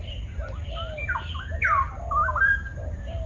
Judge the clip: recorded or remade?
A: recorded